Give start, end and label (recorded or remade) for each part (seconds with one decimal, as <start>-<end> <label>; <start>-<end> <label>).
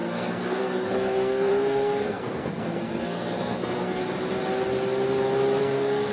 0.0-4.0 remade; 4.0-5.6 recorded; 5.6-6.1 remade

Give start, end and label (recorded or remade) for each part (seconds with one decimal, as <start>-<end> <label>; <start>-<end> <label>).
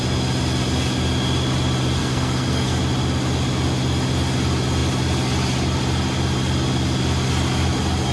0.0-2.0 recorded; 2.0-2.8 remade; 2.8-8.1 recorded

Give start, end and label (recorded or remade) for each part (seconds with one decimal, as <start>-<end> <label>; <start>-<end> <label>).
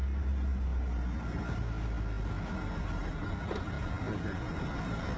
0.0-5.2 recorded